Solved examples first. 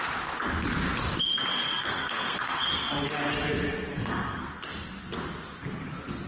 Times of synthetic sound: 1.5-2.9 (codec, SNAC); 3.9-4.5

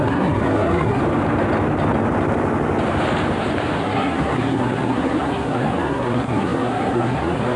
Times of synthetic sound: 0.0-1.0 (codec, SNAC); 3.8-7.6